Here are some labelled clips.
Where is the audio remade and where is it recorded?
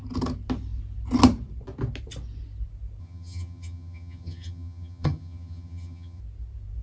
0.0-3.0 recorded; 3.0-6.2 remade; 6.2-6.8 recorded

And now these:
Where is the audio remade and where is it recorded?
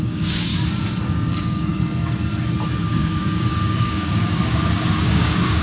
0.0-0.5 remade; 0.5-1.1 recorded; 1.1-1.7 remade; 1.7-2.9 recorded; 2.9-5.6 remade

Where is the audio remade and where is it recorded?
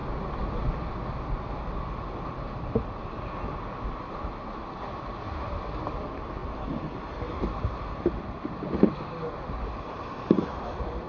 0.0-11.1 recorded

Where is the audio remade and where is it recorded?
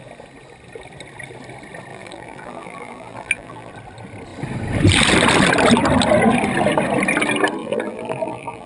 0.0-1.9 recorded; 1.9-3.7 remade; 3.7-7.6 recorded; 7.6-8.7 remade